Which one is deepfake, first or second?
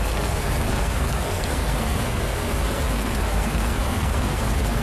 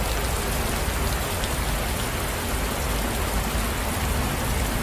first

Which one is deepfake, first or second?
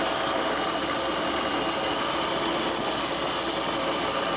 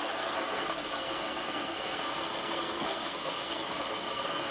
second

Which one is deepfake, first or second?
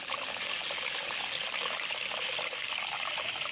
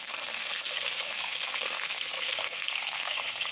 second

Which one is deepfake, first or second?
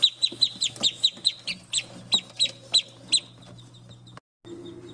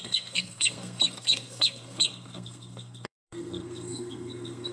second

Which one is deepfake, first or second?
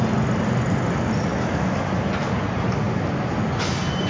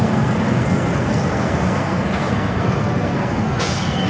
second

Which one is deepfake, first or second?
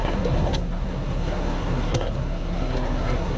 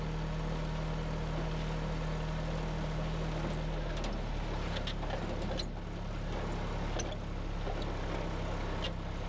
first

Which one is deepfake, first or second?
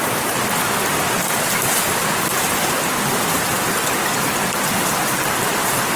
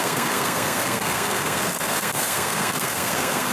second